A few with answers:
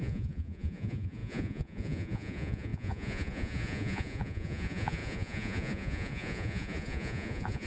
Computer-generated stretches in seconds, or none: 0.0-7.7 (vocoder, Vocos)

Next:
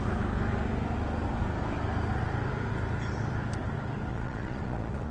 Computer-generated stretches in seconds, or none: 4.1-5.1 (vocoder, Vocos)